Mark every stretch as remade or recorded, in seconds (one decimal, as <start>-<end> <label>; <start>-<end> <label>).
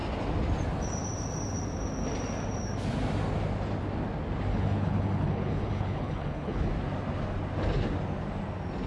0.0-4.5 recorded; 4.5-6.7 remade; 6.7-8.9 recorded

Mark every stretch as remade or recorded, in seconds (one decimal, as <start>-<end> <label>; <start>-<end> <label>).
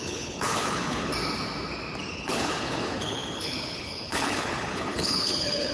0.0-1.1 remade; 1.1-2.1 recorded; 2.1-5.7 remade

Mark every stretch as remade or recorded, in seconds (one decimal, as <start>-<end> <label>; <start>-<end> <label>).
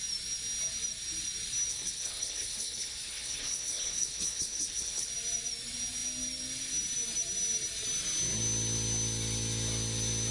0.0-1.7 recorded; 1.7-5.1 remade; 5.1-10.3 recorded